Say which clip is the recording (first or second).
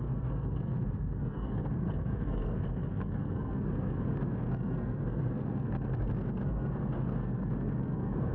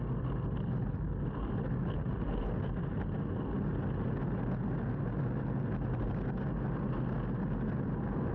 second